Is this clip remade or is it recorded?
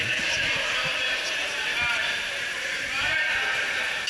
remade